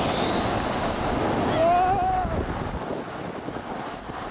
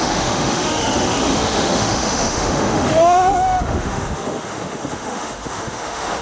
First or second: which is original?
first